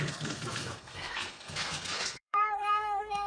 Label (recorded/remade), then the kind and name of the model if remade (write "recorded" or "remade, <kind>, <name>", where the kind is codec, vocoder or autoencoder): remade, codec, SNAC